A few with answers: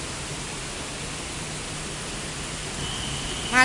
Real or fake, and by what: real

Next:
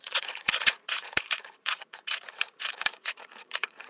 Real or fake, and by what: fake, vocoder, Vocos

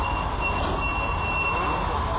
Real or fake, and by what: real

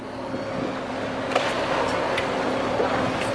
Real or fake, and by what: real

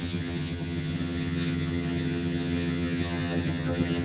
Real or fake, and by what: fake, vocoder, HiFi-GAN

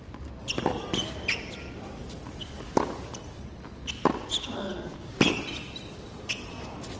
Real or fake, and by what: real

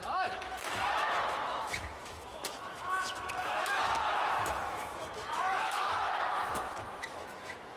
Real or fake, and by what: fake, autoencoder, DAC-VAE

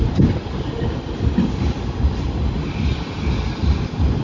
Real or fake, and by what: real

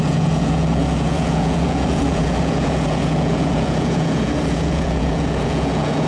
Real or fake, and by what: fake, vocoder, Vocos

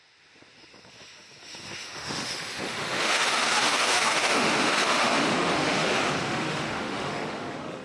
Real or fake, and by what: fake, autoencoder, DAC-VAE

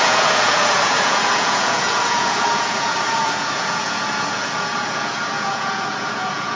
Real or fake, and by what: fake, vocoder, Vocos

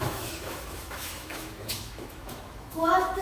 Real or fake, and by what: fake, autoencoder, DAC-VAE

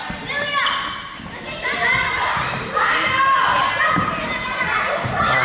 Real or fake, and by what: real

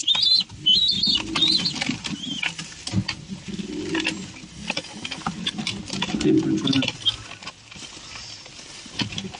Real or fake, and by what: real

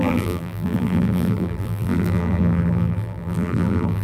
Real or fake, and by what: fake, vocoder, BigVGAN v2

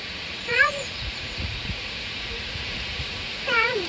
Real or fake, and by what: fake, vocoder, Vocos